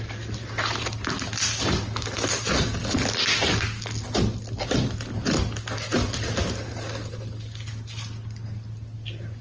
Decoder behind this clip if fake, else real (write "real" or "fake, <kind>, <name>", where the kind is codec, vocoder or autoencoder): real